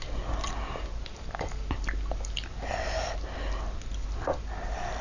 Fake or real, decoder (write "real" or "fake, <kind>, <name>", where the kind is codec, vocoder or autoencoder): real